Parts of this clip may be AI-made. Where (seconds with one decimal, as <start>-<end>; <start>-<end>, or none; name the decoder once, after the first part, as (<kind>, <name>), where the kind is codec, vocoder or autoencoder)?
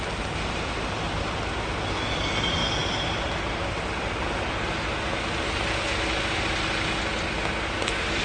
none